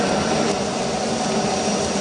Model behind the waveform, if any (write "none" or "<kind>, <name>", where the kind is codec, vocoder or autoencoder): none